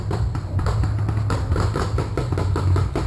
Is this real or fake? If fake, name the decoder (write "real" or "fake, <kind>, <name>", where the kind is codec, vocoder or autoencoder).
real